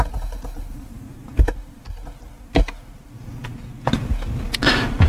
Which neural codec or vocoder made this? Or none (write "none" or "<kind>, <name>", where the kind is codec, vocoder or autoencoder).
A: none